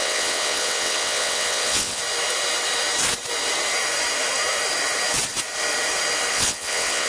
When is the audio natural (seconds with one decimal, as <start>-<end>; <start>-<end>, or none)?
2.0-6.3